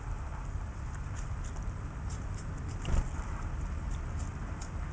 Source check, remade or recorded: recorded